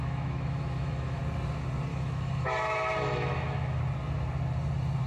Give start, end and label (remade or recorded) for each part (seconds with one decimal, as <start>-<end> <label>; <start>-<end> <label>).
0.0-1.2 remade; 1.2-1.9 recorded; 1.9-3.8 remade; 3.8-5.1 recorded